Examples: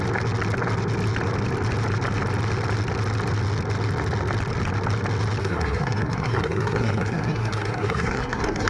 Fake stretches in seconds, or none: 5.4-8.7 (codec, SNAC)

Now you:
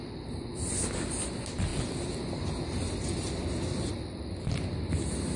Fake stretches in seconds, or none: none

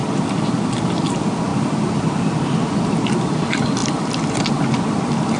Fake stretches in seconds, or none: none

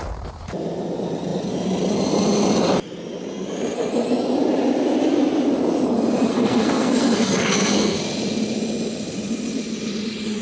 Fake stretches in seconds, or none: 6.3-8.0 (codec, SNAC)

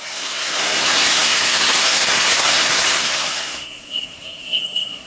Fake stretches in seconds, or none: 0.0-5.1 (codec, SNAC)